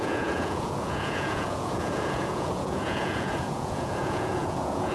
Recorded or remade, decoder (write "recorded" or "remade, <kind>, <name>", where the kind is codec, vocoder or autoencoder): remade, vocoder, Vocos